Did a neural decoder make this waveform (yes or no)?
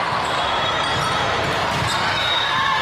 yes